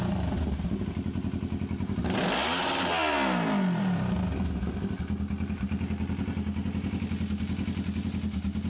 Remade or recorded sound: recorded